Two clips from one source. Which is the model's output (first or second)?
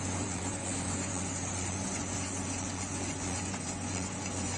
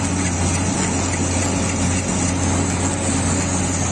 first